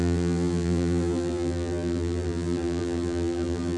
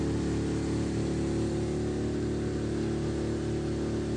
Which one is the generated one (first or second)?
first